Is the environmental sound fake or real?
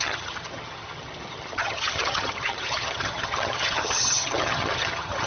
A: fake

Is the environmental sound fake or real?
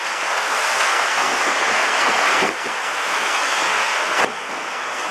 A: fake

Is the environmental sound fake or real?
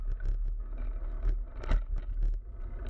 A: real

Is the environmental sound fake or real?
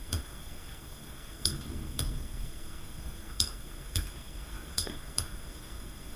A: fake